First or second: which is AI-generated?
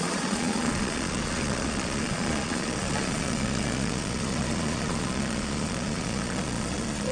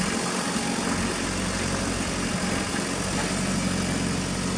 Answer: first